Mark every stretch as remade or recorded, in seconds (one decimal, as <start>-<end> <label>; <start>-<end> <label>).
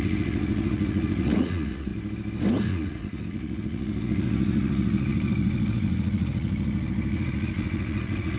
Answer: 0.0-1.9 remade; 1.9-2.6 recorded; 2.6-8.4 remade